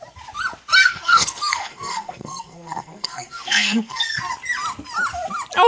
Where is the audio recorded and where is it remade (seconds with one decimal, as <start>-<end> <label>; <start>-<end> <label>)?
0.0-0.8 recorded; 0.8-4.2 remade; 4.2-5.7 recorded